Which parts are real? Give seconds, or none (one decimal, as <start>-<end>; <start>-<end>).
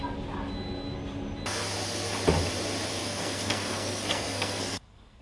0.0-3.0